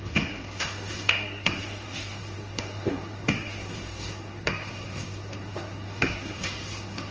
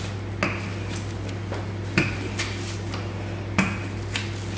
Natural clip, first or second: second